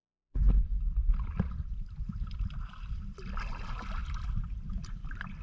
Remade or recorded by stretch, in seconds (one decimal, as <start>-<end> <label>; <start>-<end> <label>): 0.0-0.5 remade; 0.5-5.4 recorded